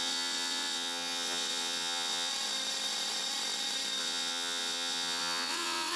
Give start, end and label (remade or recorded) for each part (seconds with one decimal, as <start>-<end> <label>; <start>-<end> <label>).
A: 0.0-2.3 remade; 2.3-4.0 recorded; 4.0-6.0 remade